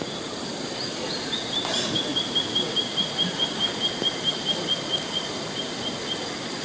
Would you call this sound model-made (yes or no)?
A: no